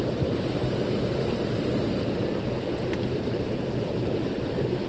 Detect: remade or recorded recorded